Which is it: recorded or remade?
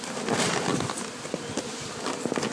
recorded